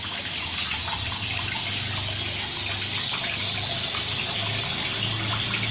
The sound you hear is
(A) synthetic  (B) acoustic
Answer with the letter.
B